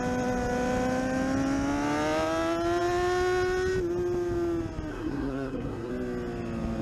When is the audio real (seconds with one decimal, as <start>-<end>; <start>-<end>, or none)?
0.0-4.9; 5.9-6.8